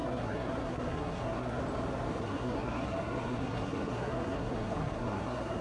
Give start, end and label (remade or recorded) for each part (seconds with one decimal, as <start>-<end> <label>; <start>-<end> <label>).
0.0-1.6 remade; 1.6-2.1 recorded; 2.1-5.6 remade